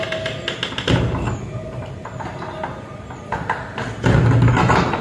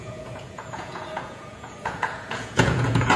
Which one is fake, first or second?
second